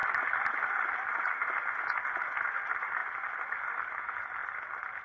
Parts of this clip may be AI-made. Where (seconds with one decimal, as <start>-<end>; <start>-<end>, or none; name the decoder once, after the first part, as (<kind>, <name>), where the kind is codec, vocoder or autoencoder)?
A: none